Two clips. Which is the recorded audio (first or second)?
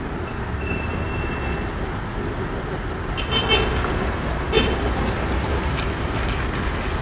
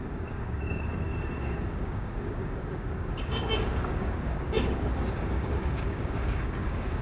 first